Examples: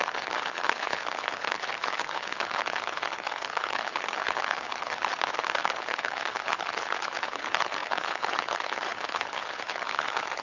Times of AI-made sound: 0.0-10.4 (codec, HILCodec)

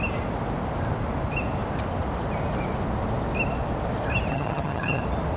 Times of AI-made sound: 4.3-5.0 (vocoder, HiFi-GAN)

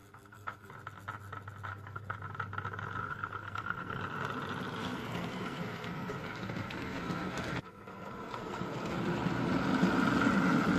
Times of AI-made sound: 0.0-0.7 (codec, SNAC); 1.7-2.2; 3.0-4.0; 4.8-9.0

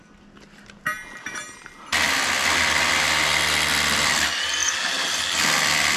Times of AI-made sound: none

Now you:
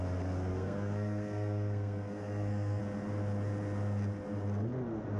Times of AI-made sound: 0.5-2.8 (codec, SNAC)

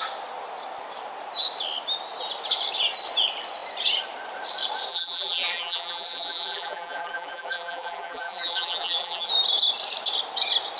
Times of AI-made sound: 4.9-9.3 (vocoder, BigVGAN v2)